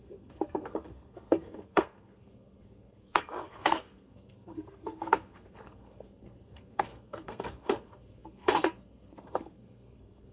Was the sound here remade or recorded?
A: remade